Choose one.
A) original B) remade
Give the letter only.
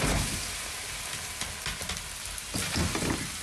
A